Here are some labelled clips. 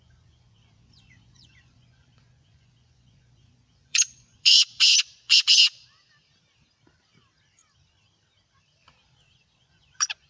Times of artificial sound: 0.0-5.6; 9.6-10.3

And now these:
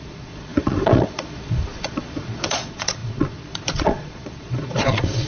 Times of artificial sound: 0.0-5.3

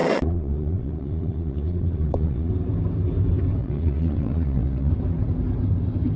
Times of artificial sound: 0.0-2.5; 3.6-4.9

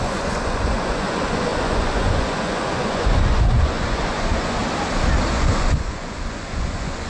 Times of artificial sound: 0.0-4.6; 5.3-7.1